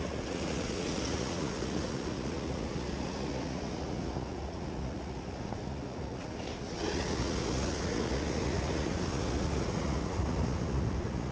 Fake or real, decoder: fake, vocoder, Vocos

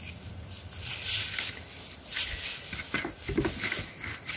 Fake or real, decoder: real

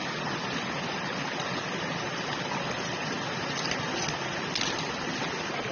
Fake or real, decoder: real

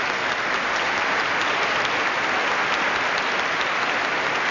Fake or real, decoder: real